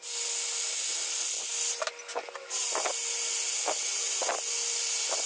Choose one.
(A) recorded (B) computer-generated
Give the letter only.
A